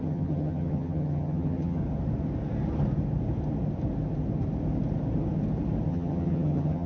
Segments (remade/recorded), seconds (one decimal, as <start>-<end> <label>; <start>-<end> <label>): 0.0-1.8 remade; 1.8-5.9 recorded; 5.9-6.9 remade